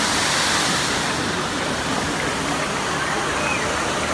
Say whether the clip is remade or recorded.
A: recorded